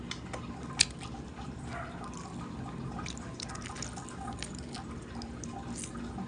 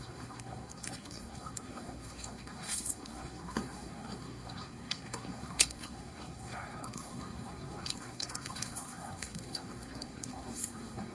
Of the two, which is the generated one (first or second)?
second